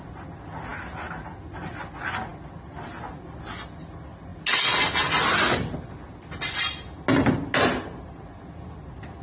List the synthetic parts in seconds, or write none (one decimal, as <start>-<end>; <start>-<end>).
none